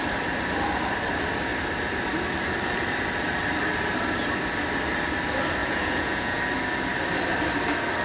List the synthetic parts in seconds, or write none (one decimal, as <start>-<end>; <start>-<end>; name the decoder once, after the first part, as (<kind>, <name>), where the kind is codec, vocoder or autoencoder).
5.6-6.4 (vocoder, Vocos)